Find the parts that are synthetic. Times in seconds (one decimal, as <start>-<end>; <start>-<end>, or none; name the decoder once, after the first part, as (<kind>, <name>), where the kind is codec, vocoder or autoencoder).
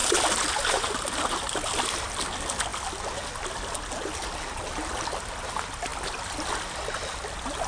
none